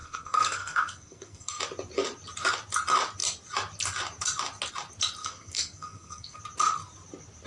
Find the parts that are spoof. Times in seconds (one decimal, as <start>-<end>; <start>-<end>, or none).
0.0-1.6; 5.2-6.4